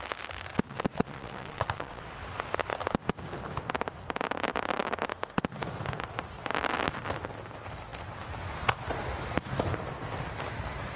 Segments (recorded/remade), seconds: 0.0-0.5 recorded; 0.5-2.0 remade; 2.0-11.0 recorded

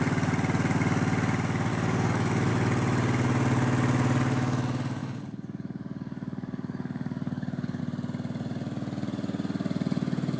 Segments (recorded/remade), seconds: 0.0-1.7 recorded; 1.7-2.5 remade; 2.5-5.0 recorded; 5.0-7.8 remade; 7.8-10.4 recorded

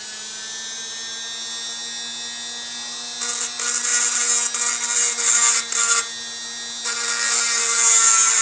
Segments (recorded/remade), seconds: 0.0-8.4 recorded

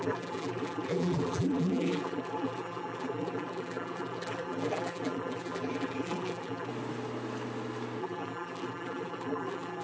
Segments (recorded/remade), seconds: 0.0-6.7 remade; 6.7-8.0 recorded; 8.0-9.8 remade

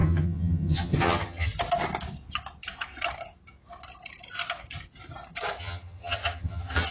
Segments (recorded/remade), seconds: 0.0-1.5 remade; 1.5-5.6 recorded; 5.6-6.9 remade

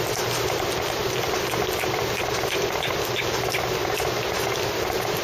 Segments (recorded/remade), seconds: 0.0-5.2 recorded

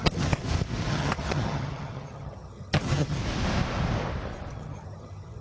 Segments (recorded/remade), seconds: 0.0-0.4 remade; 0.4-0.9 recorded; 0.9-3.2 remade; 3.2-4.5 recorded; 4.5-5.4 remade